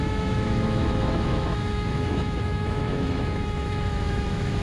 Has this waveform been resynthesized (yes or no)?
yes